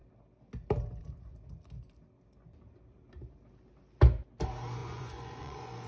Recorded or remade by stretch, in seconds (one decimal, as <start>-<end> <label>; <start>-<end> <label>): 0.0-4.8 recorded; 4.8-5.9 remade

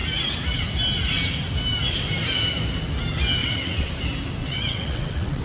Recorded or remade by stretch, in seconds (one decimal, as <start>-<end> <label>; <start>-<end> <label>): 0.0-3.4 recorded; 3.4-3.9 remade; 3.9-4.4 recorded; 4.4-5.4 remade

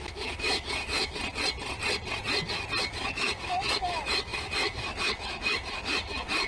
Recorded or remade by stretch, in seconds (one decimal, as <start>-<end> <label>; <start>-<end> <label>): 0.0-1.2 remade; 1.2-2.8 recorded; 2.8-6.5 remade

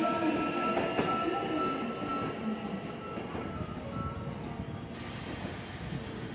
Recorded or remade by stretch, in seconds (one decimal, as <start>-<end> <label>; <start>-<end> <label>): 0.0-6.3 recorded